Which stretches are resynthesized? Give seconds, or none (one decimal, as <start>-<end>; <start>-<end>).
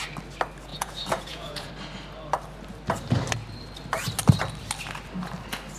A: 0.7-1.7